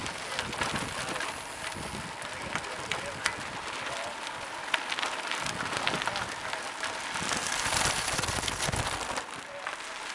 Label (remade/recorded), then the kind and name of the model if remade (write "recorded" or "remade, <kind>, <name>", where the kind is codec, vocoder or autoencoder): recorded